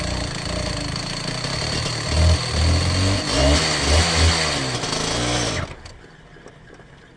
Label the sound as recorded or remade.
recorded